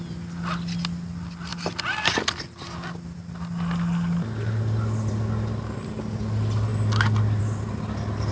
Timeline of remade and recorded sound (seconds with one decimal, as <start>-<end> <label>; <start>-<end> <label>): 0.0-8.3 recorded